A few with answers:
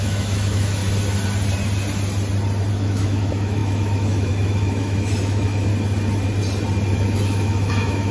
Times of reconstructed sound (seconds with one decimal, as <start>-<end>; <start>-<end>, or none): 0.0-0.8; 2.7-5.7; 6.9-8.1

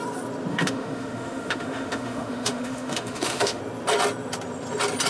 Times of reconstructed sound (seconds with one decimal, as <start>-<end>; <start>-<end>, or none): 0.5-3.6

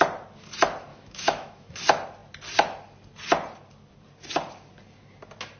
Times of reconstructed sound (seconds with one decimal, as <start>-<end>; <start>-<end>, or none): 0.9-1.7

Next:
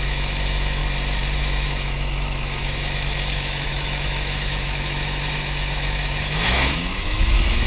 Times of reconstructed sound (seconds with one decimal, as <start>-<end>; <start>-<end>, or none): 0.0-0.8; 1.4-7.7

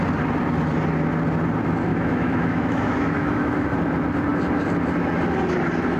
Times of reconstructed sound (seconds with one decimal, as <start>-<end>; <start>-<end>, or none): 1.9-3.7

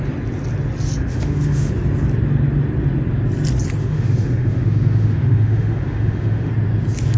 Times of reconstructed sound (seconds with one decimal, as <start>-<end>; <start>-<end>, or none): 1.1-1.7; 3.8-6.5